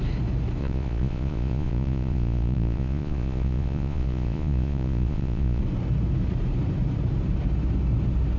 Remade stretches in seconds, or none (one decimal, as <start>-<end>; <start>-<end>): 0.6-5.6

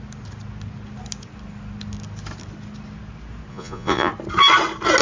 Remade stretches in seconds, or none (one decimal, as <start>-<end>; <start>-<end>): 3.5-4.1

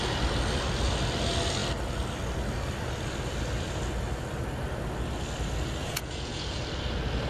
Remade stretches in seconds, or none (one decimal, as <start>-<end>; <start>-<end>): 5.8-6.6

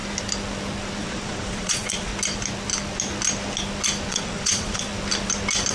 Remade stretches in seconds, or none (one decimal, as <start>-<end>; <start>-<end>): 1.0-2.1; 4.1-4.9